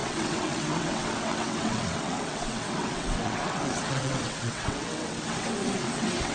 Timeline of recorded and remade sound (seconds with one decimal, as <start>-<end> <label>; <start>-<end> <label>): 0.0-6.3 remade